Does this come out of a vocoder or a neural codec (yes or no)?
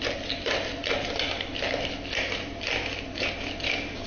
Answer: no